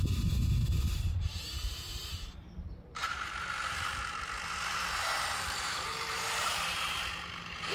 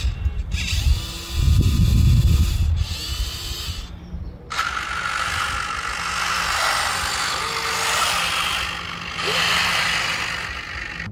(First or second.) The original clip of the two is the second